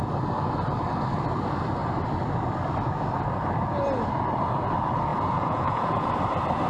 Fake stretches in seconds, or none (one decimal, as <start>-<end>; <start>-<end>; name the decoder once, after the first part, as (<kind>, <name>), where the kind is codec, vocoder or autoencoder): 5.1-6.1 (vocoder, Vocos)